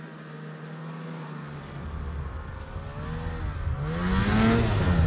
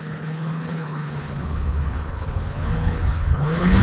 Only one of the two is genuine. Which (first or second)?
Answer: first